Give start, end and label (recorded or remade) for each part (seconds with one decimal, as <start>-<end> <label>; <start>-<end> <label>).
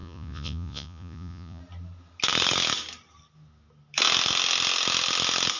0.0-1.6 remade; 1.6-5.6 recorded